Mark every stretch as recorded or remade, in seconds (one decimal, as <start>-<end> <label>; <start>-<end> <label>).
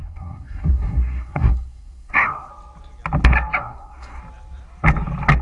0.0-2.5 remade; 2.5-3.6 recorded; 3.6-4.2 remade; 4.2-5.4 recorded